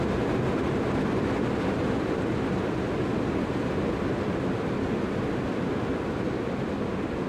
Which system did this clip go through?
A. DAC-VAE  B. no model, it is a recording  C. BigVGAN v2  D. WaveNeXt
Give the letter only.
C